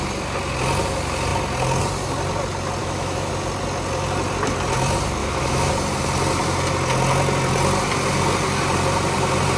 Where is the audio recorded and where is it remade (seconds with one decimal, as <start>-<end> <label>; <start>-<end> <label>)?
0.0-2.8 recorded; 2.8-3.3 remade; 3.3-5.2 recorded; 5.2-5.7 remade; 5.7-9.6 recorded